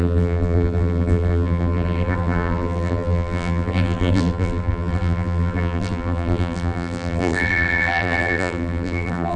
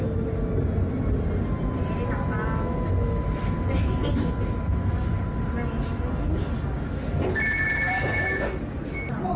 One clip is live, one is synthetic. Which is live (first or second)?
second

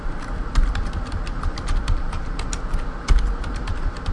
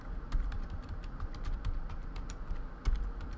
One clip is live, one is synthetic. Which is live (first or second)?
second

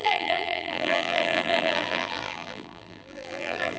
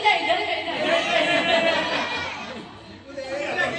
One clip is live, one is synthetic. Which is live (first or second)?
second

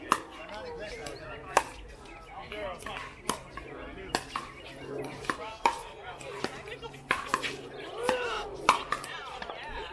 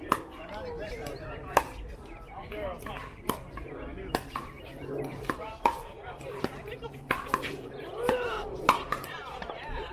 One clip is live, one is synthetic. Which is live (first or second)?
first